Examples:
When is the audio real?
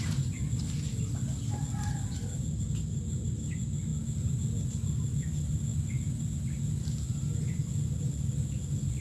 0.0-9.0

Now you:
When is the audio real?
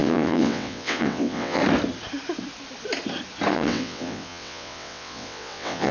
1.6-3.5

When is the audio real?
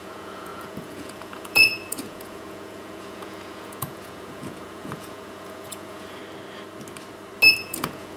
6.2-7.6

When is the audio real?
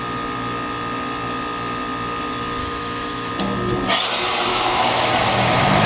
0.0-2.6; 3.3-4.5; 5.1-5.9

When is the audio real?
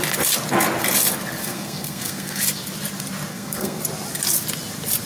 0.0-1.4; 2.4-3.3; 3.8-5.1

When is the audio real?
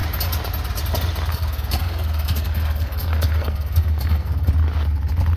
0.0-1.3; 4.5-5.4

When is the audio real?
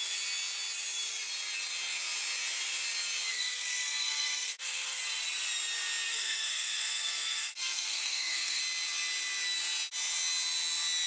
0.0-3.3; 5.0-6.1; 8.6-11.1